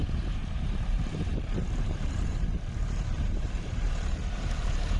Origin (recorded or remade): remade